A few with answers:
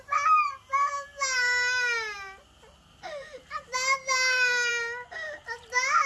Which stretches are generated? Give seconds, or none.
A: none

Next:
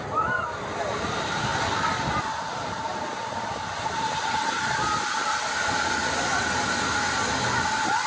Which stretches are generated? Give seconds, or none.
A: none

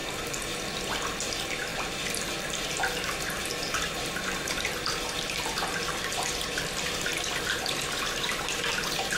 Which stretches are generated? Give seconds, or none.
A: 0.6-9.2 (vocoder, BigVGAN v2)